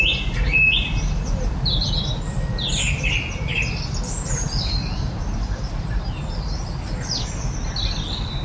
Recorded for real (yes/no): yes